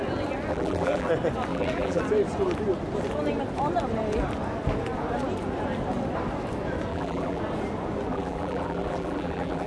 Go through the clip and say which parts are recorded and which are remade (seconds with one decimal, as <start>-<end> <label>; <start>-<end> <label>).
0.0-0.5 recorded; 0.5-1.1 remade; 1.1-1.5 recorded; 1.5-2.0 remade; 2.0-6.9 recorded; 6.9-7.4 remade; 7.4-8.1 recorded; 8.1-9.7 remade